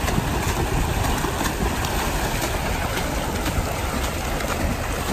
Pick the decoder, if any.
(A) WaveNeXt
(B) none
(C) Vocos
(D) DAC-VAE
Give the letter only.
B